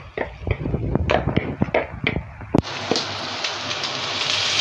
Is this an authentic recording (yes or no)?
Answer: yes